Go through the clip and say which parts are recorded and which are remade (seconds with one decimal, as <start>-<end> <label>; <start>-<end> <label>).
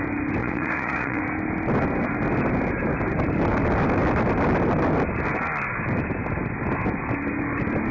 0.0-0.4 recorded; 0.4-1.2 remade; 1.2-7.9 recorded